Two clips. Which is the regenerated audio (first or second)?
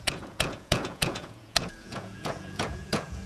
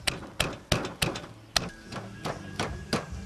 first